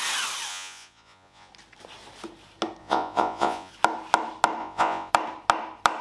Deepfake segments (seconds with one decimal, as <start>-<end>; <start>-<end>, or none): 0.5-1.5; 2.8-3.7; 4.6-5.1